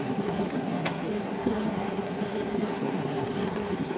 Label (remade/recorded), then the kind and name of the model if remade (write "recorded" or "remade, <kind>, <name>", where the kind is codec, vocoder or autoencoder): remade, codec, SNAC